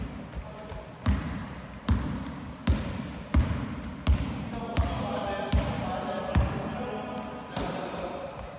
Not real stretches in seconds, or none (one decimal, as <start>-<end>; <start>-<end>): none